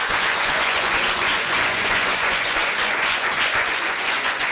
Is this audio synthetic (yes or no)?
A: yes